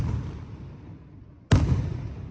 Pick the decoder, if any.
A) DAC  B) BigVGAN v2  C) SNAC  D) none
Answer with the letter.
D